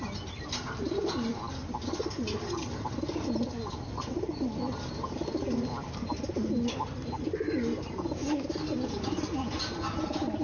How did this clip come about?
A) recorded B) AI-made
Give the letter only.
A